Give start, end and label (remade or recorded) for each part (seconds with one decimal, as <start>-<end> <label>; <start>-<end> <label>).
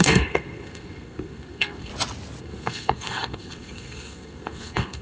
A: 0.0-1.9 remade; 1.9-2.4 recorded; 2.4-5.0 remade